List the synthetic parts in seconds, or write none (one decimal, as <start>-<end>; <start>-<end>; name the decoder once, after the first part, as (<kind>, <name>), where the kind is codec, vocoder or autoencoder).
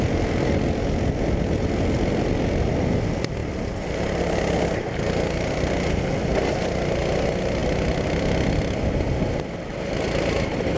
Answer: none